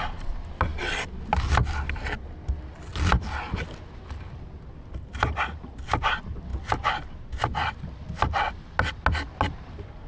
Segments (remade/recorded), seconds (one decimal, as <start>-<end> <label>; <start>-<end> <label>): 0.0-10.1 recorded